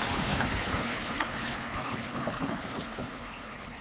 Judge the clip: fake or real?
fake